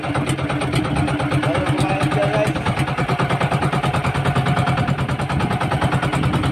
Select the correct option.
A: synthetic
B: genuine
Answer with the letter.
B